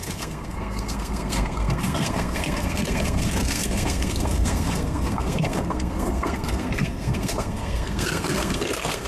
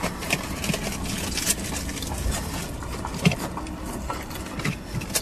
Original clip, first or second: second